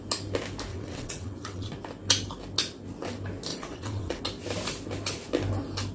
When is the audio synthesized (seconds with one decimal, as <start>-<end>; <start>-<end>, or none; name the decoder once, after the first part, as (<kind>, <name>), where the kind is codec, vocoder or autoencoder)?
0.7-1.7 (vocoder, WaveNeXt); 3.5-4.2